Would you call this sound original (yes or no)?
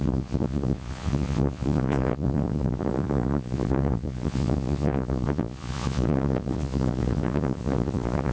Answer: no